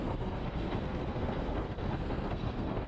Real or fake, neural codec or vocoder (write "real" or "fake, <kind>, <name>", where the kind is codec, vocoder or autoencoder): fake, codec, SNAC